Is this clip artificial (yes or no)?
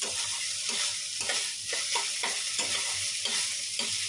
yes